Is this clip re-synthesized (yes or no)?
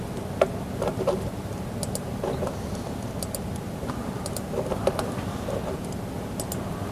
no